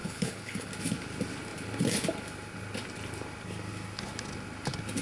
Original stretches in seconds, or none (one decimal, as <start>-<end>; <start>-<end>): 0.7-5.0